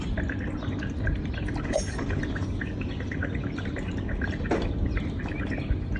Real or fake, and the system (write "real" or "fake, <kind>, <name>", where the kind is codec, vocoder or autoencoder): real